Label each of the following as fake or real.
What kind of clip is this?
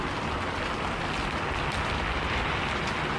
real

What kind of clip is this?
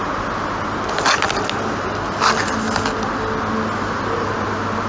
real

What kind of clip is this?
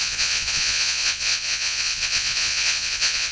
fake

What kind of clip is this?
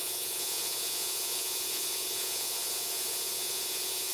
fake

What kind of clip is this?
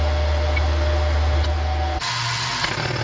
real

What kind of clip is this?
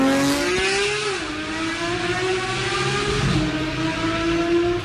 real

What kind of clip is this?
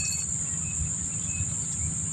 real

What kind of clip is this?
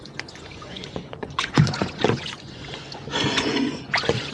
fake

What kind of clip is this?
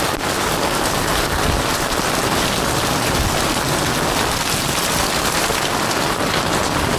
real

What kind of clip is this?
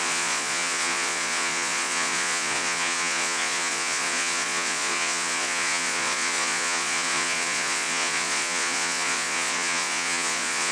fake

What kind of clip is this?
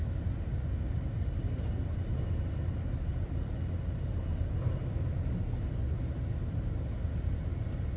real